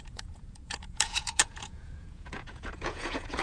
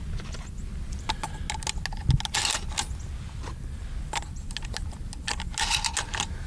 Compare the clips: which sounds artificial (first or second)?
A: first